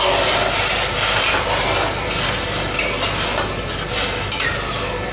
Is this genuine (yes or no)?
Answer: yes